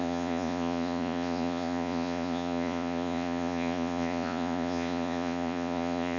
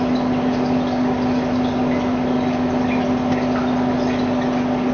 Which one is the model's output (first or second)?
first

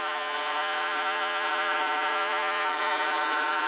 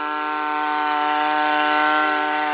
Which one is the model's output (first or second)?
first